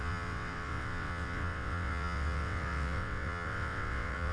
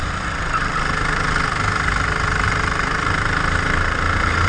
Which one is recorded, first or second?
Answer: second